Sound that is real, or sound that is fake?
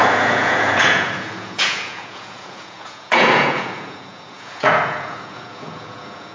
fake